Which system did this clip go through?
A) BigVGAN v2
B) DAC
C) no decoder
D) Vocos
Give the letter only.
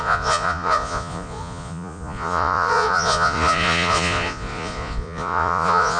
D